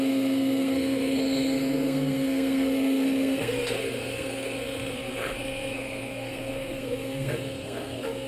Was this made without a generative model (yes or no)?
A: no